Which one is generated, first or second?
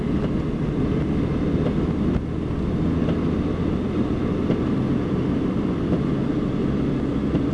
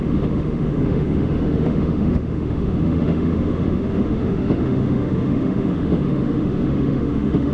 second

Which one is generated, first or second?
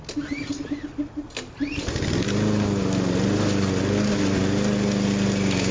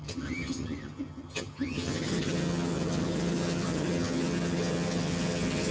second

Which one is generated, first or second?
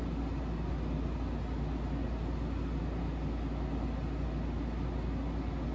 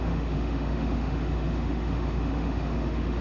second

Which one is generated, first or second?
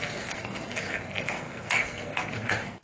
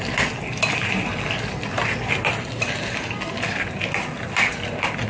first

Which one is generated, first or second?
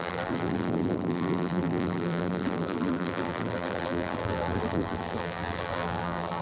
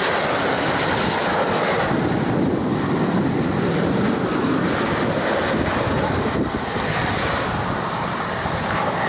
first